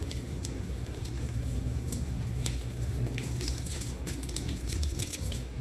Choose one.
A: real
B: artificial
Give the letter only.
B